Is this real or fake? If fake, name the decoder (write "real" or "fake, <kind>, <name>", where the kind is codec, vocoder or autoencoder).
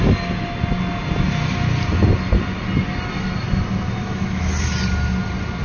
real